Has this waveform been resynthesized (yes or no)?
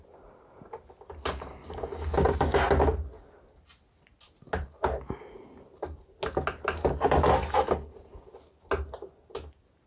no